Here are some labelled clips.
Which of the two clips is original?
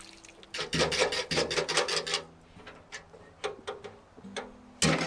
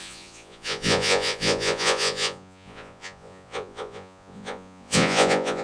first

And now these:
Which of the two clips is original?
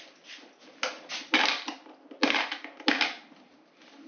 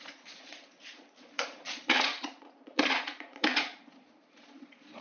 first